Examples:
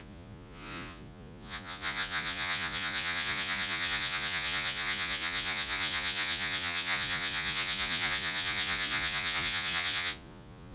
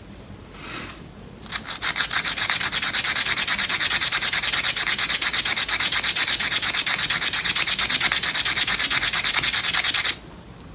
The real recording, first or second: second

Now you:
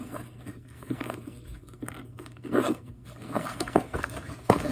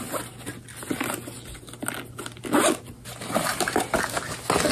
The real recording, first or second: second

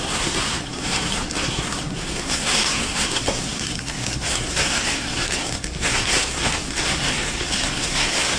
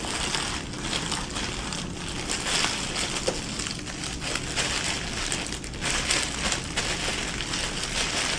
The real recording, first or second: second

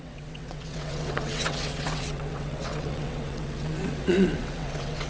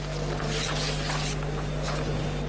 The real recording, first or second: second